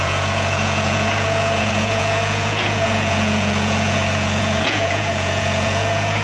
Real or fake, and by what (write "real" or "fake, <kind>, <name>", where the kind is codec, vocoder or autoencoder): fake, vocoder, Vocos